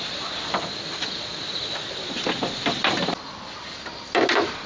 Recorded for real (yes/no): yes